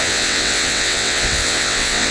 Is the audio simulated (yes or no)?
yes